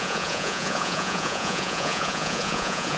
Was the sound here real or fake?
fake